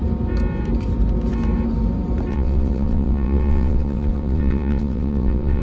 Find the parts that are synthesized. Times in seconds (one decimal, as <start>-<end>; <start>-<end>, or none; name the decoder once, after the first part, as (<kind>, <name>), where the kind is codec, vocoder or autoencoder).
2.3-5.6 (vocoder, WaveNeXt)